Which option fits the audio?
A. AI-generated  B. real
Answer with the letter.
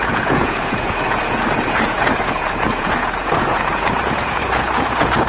A